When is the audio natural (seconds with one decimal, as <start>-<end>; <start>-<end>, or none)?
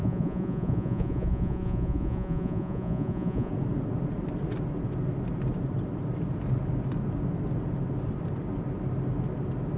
3.5-9.8